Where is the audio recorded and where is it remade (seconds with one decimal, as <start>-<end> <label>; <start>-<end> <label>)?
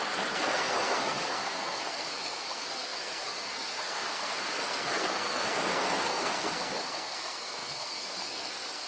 0.0-8.9 remade